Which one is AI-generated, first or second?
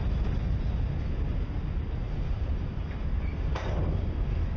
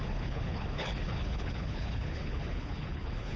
second